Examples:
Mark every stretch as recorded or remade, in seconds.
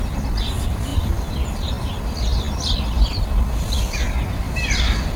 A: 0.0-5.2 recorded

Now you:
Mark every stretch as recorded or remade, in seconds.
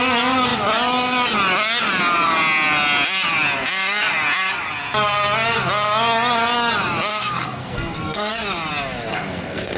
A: 0.0-7.1 recorded; 7.1-8.3 remade; 8.3-9.1 recorded; 9.1-9.8 remade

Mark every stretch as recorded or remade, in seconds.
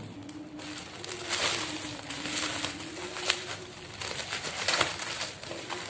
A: 0.0-5.9 recorded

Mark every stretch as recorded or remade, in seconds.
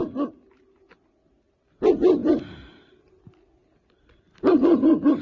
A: 0.0-2.2 recorded; 2.2-5.2 remade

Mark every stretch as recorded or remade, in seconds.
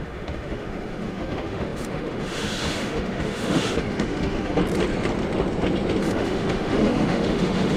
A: 0.0-4.6 remade; 4.6-6.0 recorded; 6.0-7.8 remade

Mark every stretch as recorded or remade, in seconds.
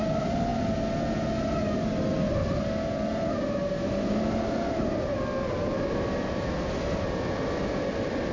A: 0.0-8.3 recorded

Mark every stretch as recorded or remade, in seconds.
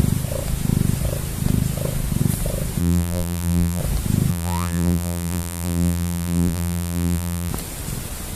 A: 0.0-2.8 recorded; 2.8-3.8 remade; 3.8-4.3 recorded; 4.3-7.5 remade; 7.5-8.4 recorded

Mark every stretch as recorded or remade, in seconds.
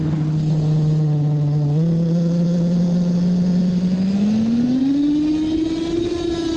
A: 0.0-6.6 recorded